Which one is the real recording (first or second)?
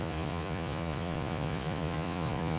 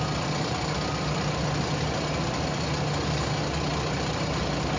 second